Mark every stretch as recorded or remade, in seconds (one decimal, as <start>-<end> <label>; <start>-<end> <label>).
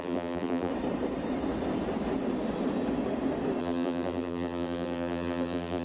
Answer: 0.0-0.7 remade; 0.7-3.6 recorded; 3.6-5.8 remade